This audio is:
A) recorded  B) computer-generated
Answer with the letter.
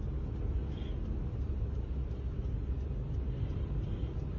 A